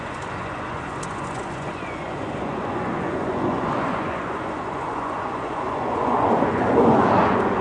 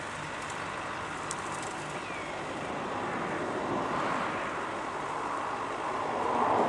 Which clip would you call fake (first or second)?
first